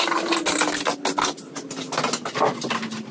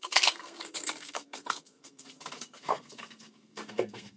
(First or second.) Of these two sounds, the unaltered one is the first